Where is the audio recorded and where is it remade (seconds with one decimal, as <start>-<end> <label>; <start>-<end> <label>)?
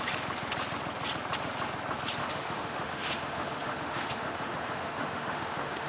0.0-2.2 recorded; 2.2-5.9 remade